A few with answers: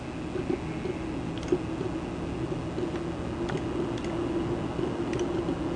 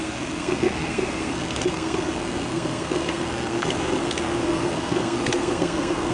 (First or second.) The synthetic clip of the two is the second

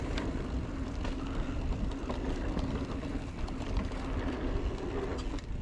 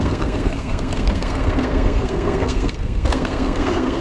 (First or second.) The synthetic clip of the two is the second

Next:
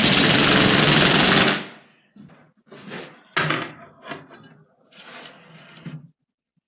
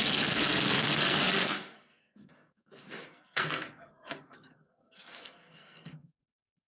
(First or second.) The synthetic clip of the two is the second